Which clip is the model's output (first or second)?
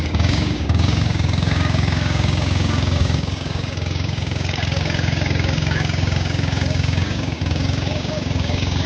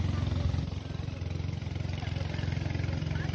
first